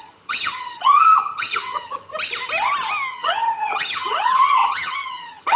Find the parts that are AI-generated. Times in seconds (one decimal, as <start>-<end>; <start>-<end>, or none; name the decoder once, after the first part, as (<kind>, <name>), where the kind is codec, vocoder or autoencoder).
0.0-2.1 (vocoder, HiFi-GAN); 3.1-5.6